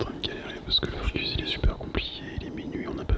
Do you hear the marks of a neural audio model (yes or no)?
no